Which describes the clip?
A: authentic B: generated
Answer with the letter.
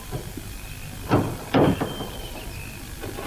A